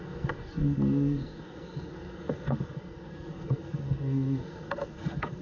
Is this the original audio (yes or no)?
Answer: no